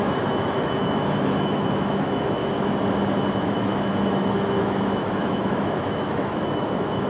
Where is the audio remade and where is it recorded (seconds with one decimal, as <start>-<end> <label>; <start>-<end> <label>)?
0.0-2.4 remade; 2.4-3.3 recorded; 3.3-7.1 remade